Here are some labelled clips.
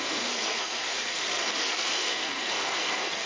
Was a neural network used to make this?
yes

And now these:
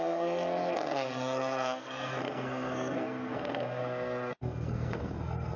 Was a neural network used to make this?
yes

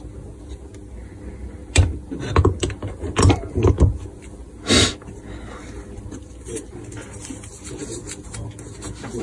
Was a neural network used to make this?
no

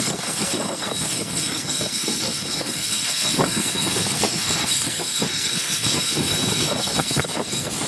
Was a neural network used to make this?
yes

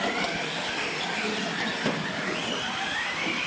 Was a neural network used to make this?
no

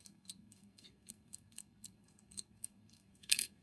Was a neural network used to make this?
yes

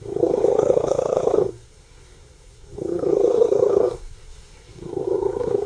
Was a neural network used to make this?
yes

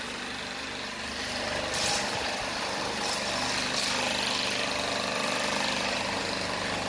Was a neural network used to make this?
no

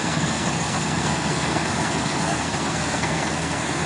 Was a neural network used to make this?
yes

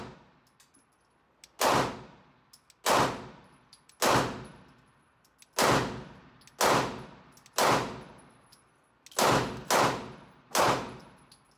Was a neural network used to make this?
no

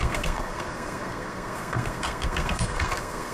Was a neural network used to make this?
yes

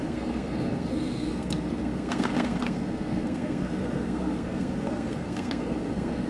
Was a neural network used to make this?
yes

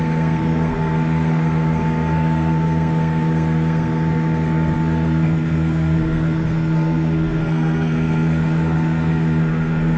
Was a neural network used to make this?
yes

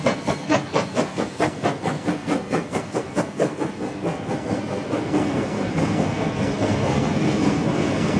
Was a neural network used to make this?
yes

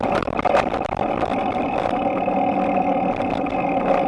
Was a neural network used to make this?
no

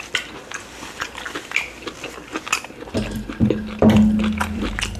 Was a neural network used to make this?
no